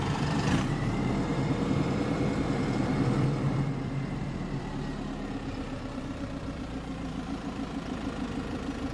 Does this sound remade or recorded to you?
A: remade